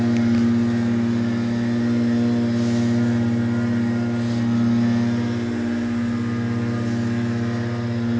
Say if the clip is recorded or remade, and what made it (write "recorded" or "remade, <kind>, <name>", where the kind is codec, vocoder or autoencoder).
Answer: recorded